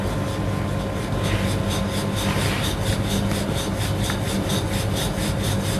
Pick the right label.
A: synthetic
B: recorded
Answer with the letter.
B